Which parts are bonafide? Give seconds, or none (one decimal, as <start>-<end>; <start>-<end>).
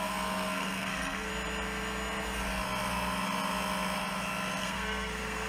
1.3-4.6